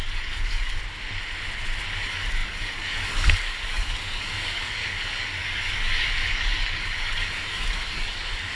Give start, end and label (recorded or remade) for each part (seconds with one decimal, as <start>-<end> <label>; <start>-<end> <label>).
0.0-0.8 remade; 0.8-1.9 recorded; 1.9-8.5 remade